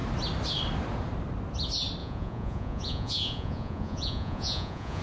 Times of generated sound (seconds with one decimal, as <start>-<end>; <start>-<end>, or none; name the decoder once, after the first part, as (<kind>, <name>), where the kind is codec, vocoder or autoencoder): 2.0-5.0 (vocoder, Vocos)